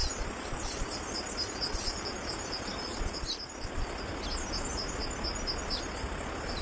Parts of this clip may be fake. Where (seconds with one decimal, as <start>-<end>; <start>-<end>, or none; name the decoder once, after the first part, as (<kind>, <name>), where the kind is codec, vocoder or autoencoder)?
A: 0.0-4.0 (vocoder, BigVGAN v2)